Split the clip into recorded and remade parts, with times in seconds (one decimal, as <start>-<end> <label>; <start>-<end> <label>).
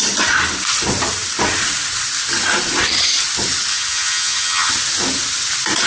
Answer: 0.0-3.7 recorded; 3.7-4.7 remade; 4.7-5.9 recorded